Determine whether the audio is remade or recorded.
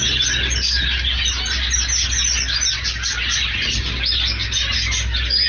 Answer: recorded